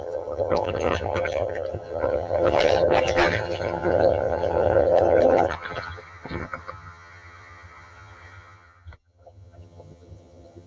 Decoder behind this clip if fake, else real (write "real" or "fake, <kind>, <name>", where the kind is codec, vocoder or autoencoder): fake, vocoder, HiFi-GAN